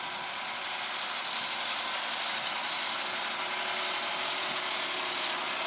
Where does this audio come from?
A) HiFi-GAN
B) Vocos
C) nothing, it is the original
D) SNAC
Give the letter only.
C